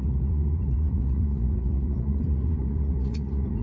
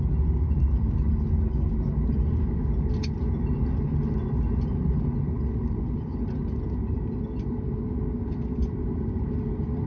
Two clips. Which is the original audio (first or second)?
second